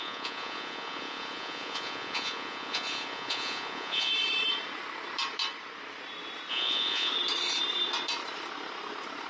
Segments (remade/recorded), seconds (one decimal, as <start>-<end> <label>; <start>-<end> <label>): 0.0-4.1 remade; 4.1-6.5 recorded; 6.5-7.1 remade; 7.1-9.3 recorded